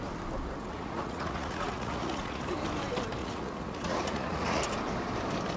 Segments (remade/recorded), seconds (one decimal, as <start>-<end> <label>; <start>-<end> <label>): 0.0-0.6 recorded; 0.6-2.4 remade; 2.4-3.2 recorded; 3.2-4.6 remade; 4.6-5.6 recorded

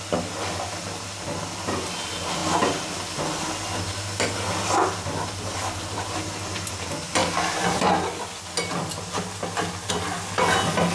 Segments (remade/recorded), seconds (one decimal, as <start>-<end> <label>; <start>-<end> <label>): 0.0-10.9 recorded

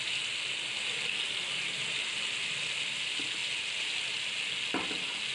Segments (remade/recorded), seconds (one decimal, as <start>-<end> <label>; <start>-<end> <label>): 0.0-5.3 recorded

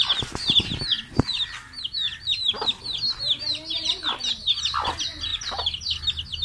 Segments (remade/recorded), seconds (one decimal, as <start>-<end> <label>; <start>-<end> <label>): 0.0-6.4 recorded

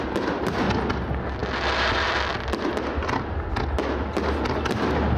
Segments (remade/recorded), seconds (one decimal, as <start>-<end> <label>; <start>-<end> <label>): 0.0-5.2 recorded

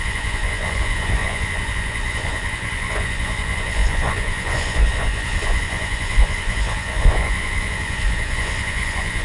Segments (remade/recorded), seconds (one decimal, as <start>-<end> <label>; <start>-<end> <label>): 0.0-9.2 remade

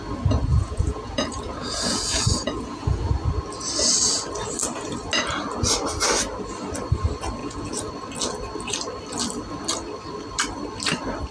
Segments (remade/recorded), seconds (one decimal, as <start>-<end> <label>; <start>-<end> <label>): 0.0-0.5 recorded; 0.5-3.1 remade; 3.1-7.4 recorded; 7.4-7.9 remade; 7.9-11.3 recorded